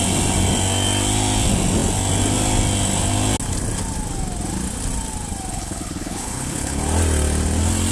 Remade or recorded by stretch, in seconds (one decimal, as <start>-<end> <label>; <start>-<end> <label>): 0.0-5.5 recorded; 5.5-6.8 remade; 6.8-7.9 recorded